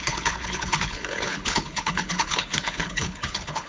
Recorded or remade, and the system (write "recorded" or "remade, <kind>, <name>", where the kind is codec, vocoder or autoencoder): remade, codec, HILCodec